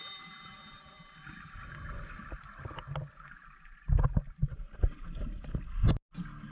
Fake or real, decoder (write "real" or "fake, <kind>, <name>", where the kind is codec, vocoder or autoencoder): real